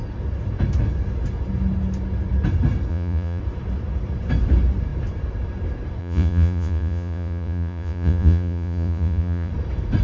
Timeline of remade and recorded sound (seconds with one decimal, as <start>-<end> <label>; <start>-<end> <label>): 0.0-2.9 recorded; 2.9-3.4 remade; 3.4-6.0 recorded; 6.0-9.5 remade; 9.5-10.0 recorded